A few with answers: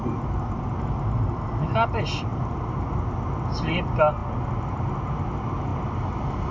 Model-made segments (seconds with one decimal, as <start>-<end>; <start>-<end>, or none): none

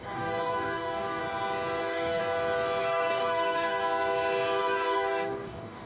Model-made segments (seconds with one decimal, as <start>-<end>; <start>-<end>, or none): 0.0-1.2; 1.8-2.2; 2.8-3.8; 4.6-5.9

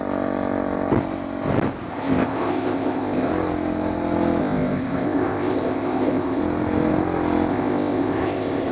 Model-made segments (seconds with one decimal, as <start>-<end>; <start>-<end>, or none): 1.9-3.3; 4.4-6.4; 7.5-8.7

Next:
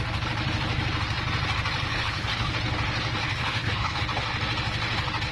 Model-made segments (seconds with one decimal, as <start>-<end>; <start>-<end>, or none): 1.9-2.5; 3.2-4.0

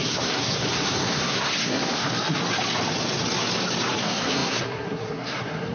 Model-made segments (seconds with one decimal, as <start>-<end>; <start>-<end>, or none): 0.0-2.4; 4.0-5.7